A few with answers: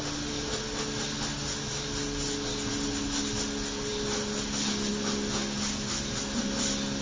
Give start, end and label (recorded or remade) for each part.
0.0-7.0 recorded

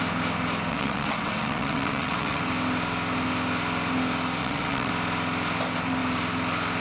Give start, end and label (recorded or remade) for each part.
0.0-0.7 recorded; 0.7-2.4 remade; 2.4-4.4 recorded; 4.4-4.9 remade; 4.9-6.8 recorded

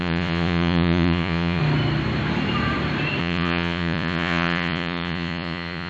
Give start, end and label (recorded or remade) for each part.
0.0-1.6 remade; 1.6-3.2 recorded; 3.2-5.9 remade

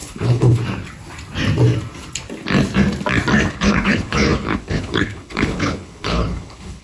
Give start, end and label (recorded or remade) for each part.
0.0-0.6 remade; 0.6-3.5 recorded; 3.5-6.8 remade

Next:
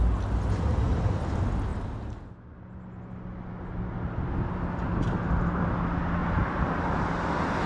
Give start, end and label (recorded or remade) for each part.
0.0-6.2 recorded; 6.2-7.3 remade; 7.3-7.7 recorded

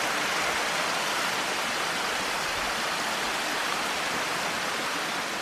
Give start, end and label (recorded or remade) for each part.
0.0-3.5 recorded; 3.5-4.0 remade; 4.0-5.4 recorded

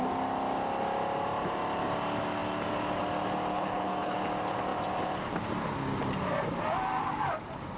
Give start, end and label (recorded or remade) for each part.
0.0-3.5 recorded; 3.5-4.2 remade; 4.2-7.8 recorded

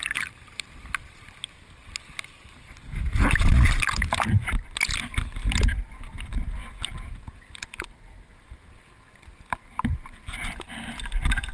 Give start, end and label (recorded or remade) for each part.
0.0-11.5 recorded